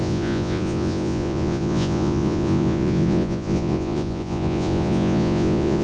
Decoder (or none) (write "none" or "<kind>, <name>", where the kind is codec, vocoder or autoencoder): vocoder, Vocos